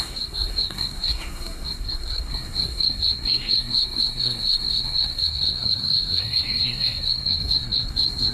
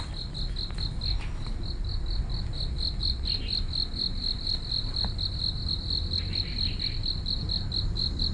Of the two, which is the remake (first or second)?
first